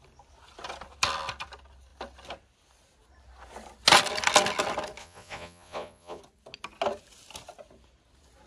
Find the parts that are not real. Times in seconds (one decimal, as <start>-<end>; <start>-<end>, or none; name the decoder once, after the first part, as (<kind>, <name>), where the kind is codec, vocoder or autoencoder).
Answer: 5.0-6.2 (vocoder, Vocos)